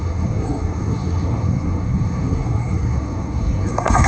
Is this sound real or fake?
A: fake